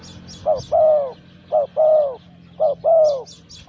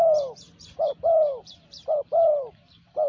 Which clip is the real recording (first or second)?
first